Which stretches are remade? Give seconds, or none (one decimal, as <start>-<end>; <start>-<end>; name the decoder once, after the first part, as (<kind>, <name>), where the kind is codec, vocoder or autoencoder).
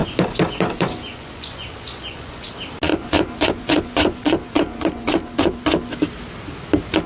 0.0-2.5 (vocoder, Vocos); 2.9-5.6